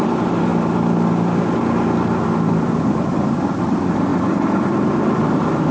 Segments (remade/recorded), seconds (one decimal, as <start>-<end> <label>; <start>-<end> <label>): 0.0-0.5 remade; 0.5-3.1 recorded; 3.1-5.7 remade